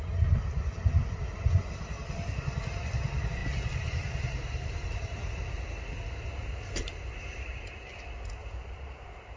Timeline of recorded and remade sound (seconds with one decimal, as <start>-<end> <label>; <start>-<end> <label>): 0.0-3.4 recorded; 3.4-5.4 remade; 5.4-6.4 recorded; 6.4-7.5 remade; 7.5-8.4 recorded; 8.4-9.4 remade